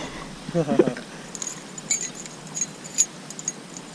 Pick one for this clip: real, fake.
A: real